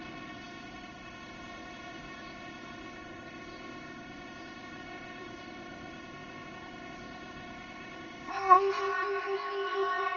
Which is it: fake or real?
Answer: fake